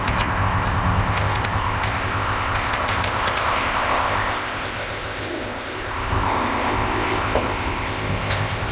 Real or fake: fake